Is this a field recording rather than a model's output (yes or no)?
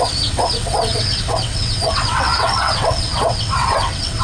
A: no